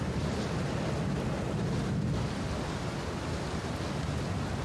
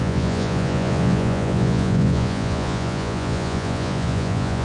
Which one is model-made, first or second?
second